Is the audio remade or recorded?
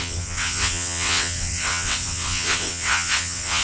remade